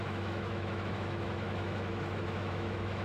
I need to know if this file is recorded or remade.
remade